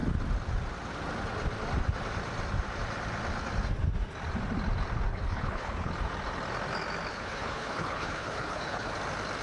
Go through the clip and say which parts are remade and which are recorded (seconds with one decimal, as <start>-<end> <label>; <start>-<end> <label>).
0.0-5.1 recorded; 5.1-5.9 remade; 5.9-7.1 recorded; 7.1-8.9 remade; 8.9-9.4 recorded

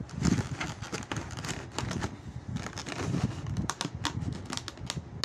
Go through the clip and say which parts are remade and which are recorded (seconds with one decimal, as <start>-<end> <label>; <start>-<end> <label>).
0.0-5.2 recorded

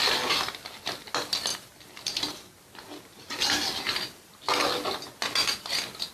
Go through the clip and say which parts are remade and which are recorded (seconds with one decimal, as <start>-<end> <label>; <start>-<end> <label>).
0.0-6.1 recorded

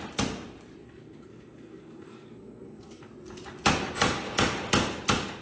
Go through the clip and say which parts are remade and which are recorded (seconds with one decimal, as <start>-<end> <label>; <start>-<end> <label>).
0.0-0.8 recorded; 0.8-3.1 remade; 3.1-5.4 recorded